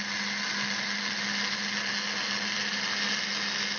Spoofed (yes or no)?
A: no